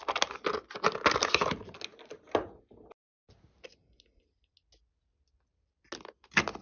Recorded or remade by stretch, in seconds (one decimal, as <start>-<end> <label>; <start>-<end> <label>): 0.0-6.6 recorded